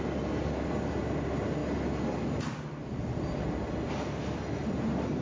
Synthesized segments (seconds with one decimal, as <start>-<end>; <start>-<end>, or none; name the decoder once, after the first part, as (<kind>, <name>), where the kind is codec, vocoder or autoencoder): none